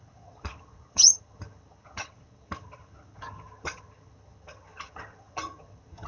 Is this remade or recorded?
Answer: remade